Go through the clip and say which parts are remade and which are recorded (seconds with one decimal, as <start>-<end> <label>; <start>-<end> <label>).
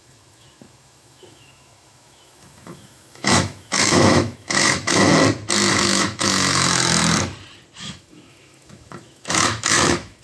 0.0-5.1 remade; 5.1-5.7 recorded; 5.7-7.0 remade; 7.0-7.8 recorded; 7.8-10.2 remade